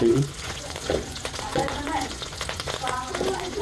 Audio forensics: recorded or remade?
remade